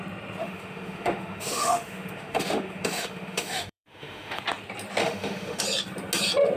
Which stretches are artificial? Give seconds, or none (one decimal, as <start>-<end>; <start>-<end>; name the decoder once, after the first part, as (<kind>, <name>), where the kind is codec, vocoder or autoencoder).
0.4-4.4 (autoencoder, DAC-VAE); 5.0-5.6